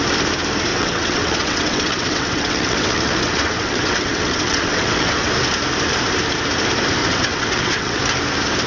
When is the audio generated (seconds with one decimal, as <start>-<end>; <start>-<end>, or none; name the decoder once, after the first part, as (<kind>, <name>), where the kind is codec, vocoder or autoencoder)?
0.7-5.3 (vocoder, WaveNeXt); 7.0-8.0